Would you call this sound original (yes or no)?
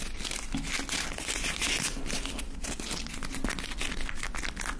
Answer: yes